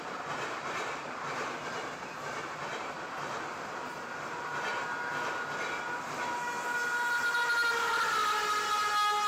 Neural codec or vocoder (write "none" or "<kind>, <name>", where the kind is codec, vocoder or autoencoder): none